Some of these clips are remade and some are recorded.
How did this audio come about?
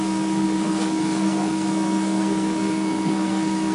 remade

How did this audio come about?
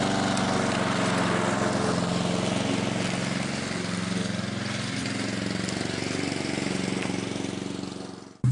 recorded